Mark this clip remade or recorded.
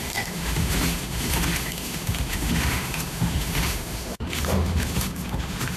remade